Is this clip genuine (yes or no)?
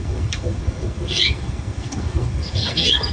no